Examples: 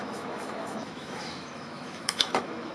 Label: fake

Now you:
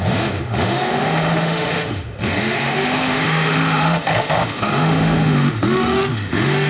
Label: fake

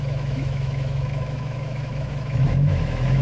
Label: fake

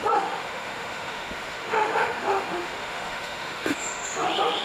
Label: fake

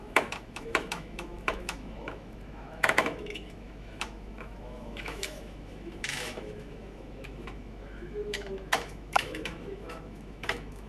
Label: fake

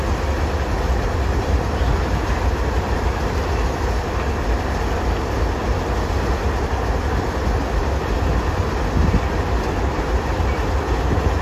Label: real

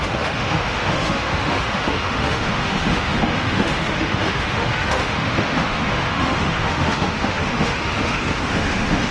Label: fake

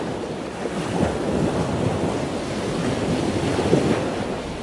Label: real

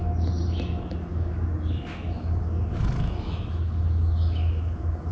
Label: fake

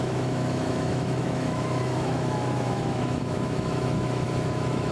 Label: fake